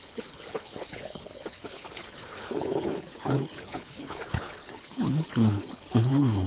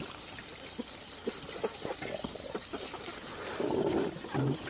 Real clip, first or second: second